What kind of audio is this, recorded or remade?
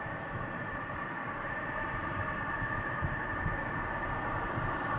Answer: remade